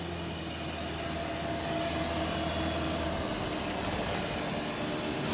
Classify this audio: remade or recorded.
recorded